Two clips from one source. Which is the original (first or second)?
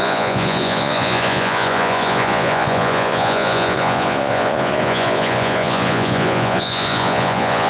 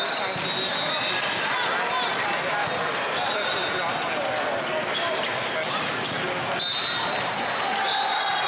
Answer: second